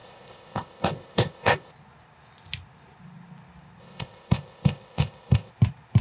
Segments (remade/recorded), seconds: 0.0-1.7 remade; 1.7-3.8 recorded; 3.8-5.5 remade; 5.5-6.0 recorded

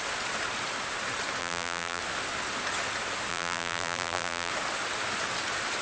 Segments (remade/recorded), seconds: 0.0-1.4 recorded; 1.4-2.0 remade; 2.0-3.3 recorded; 3.3-4.5 remade; 4.5-5.8 recorded

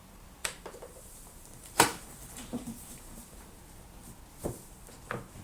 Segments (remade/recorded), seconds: 0.0-0.4 recorded; 0.4-3.6 remade; 3.6-5.4 recorded

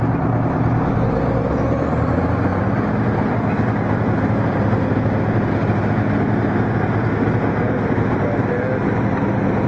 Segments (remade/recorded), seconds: 0.0-9.7 recorded

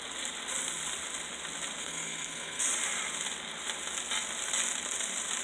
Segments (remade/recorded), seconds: 0.0-1.8 recorded; 1.8-2.6 remade; 2.6-5.4 recorded

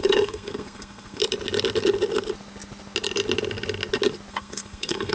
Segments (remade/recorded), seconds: 0.0-1.2 remade; 1.2-4.3 recorded; 4.3-5.1 remade

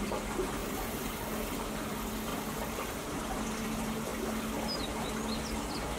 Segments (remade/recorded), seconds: 0.0-0.6 recorded; 0.6-1.3 remade; 1.3-2.3 recorded; 2.3-3.4 remade; 3.4-6.0 recorded